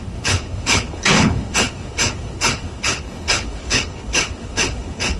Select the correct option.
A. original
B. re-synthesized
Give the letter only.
B